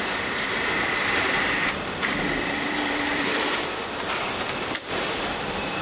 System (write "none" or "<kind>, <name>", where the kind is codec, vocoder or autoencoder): vocoder, BigVGAN v2